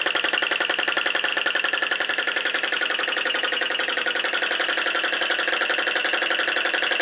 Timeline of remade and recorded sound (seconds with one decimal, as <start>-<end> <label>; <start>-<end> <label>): 0.0-7.0 recorded